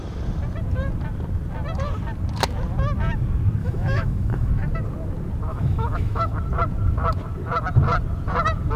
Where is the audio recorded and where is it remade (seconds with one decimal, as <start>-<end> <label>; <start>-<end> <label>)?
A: 0.0-3.6 recorded; 3.6-4.5 remade; 4.5-5.5 recorded; 5.5-6.3 remade; 6.3-8.8 recorded